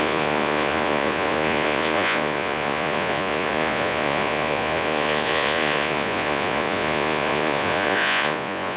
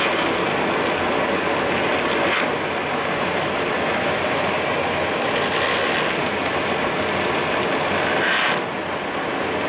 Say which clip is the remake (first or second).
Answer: first